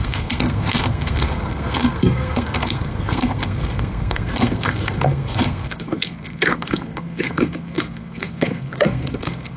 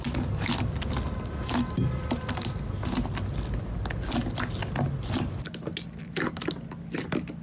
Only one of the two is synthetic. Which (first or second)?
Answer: first